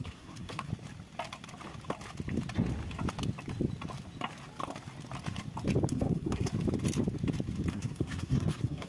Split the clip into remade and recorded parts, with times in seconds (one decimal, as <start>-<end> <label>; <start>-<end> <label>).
0.0-0.7 remade; 0.7-5.9 recorded; 5.9-6.5 remade; 6.5-7.7 recorded; 7.7-8.9 remade